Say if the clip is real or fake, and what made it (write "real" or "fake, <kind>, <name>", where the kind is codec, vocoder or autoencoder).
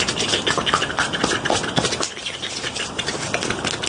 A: real